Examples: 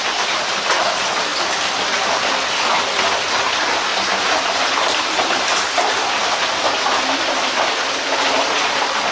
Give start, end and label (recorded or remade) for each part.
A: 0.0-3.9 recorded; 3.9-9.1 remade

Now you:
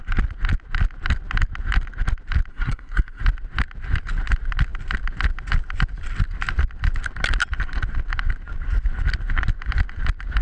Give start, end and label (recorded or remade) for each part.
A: 0.0-2.5 recorded; 2.5-3.2 remade; 3.2-10.4 recorded